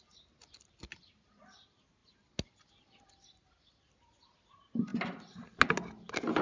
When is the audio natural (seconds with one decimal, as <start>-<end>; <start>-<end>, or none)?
0.0-6.4